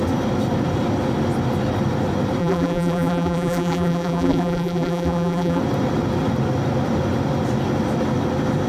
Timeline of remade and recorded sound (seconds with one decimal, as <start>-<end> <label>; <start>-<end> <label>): 0.0-2.4 recorded; 2.4-5.6 remade; 5.6-8.7 recorded